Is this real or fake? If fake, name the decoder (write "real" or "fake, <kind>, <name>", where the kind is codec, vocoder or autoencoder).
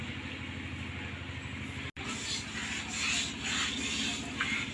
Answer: real